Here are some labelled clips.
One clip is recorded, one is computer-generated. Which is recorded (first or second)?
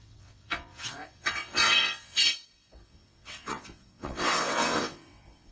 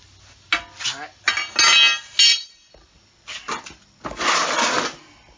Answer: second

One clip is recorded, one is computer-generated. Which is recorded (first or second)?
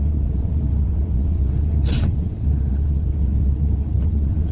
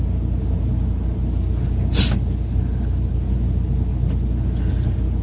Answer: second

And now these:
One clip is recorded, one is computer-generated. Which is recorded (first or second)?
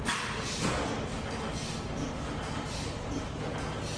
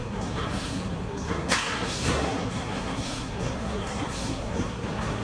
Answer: first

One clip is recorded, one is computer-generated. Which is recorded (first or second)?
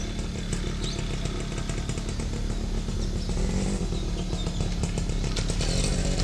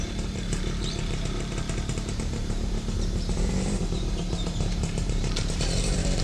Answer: first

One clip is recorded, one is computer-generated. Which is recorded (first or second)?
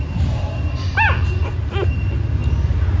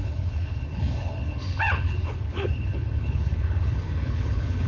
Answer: first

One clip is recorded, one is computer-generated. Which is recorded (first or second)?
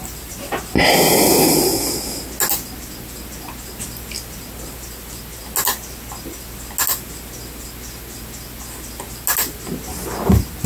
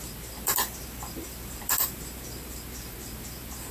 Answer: first